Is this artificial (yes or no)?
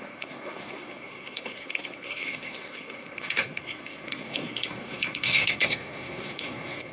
yes